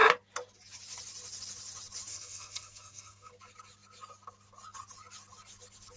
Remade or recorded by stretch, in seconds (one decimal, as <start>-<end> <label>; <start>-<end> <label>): 0.0-2.1 recorded; 2.1-3.3 remade; 3.3-6.0 recorded